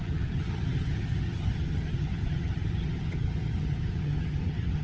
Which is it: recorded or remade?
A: remade